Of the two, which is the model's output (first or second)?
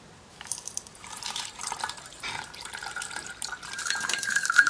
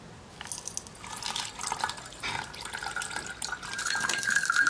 first